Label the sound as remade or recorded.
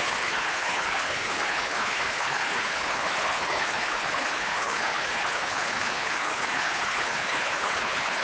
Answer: remade